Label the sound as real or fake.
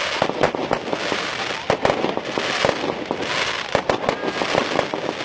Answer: real